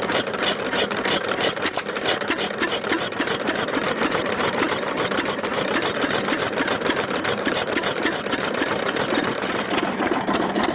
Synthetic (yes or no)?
yes